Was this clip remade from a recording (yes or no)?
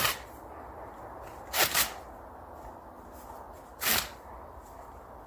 no